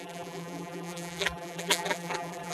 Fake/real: fake